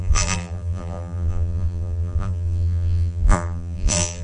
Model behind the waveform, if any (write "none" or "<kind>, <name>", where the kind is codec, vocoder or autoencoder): vocoder, BigVGAN v2